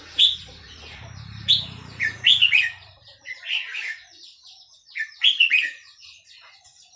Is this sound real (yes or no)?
no